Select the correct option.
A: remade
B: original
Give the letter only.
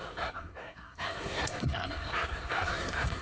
A